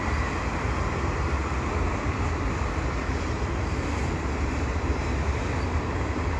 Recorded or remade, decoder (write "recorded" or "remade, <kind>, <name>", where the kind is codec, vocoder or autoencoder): recorded